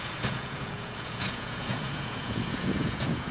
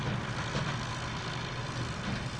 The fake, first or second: first